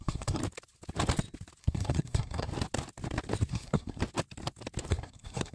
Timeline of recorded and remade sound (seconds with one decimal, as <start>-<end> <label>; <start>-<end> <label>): 0.0-0.4 remade; 0.4-1.6 recorded; 1.6-2.5 remade; 2.5-3.5 recorded; 3.5-4.0 remade; 4.0-4.9 recorded; 4.9-5.5 remade